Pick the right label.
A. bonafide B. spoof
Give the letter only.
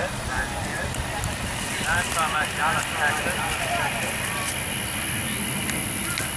A